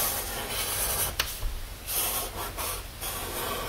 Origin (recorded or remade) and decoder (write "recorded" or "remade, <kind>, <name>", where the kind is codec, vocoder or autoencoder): recorded